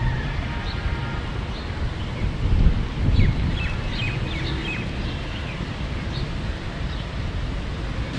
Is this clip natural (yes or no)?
no